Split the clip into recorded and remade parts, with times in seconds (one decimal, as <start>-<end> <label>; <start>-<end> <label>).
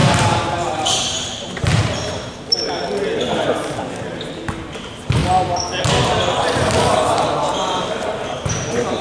0.0-3.3 remade; 3.3-9.0 recorded